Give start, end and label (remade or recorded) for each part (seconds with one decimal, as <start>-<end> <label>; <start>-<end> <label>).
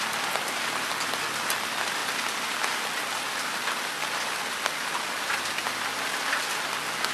0.0-7.1 recorded